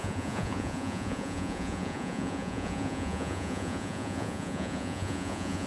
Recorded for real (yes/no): no